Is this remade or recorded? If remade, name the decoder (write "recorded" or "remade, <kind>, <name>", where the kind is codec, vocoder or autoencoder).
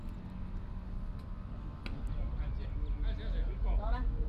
recorded